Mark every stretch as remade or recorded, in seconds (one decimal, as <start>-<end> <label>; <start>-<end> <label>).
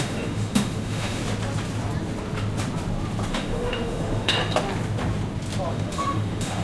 0.0-1.2 remade; 1.2-3.3 recorded; 3.3-4.4 remade; 4.4-5.7 recorded; 5.7-6.6 remade